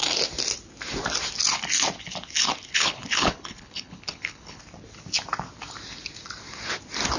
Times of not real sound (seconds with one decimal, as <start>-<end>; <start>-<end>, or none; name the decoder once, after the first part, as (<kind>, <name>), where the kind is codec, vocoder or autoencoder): 2.7-4.6 (codec, HILCodec)